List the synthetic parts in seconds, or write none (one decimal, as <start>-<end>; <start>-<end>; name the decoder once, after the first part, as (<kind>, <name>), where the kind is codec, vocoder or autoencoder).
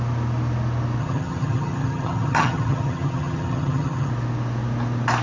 1.0-4.1 (vocoder, HiFi-GAN)